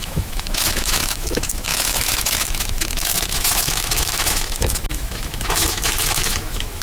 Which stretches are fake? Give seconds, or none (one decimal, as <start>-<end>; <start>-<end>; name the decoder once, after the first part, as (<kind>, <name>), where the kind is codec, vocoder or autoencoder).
0.0-6.8 (autoencoder, DAC-VAE)